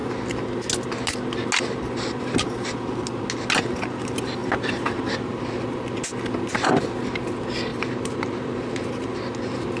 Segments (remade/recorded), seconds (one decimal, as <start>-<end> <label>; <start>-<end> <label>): 0.0-4.4 recorded; 4.4-5.3 remade; 5.3-7.7 recorded; 7.7-9.4 remade; 9.4-9.8 recorded